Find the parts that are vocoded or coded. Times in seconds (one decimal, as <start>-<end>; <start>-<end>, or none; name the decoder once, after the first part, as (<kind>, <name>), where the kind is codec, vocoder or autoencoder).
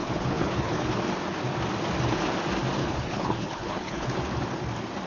0.0-1.0 (codec, HILCodec); 2.8-4.1